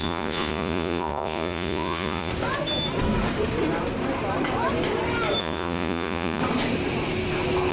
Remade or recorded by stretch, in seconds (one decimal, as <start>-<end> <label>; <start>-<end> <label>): 0.0-2.3 remade; 2.3-5.4 recorded; 5.4-6.4 remade; 6.4-7.7 recorded